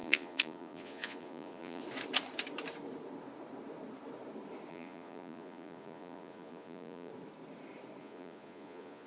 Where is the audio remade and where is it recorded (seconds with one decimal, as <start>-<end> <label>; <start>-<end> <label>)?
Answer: 0.0-1.8 remade; 1.8-4.7 recorded; 4.7-7.1 remade; 7.1-8.0 recorded; 8.0-9.1 remade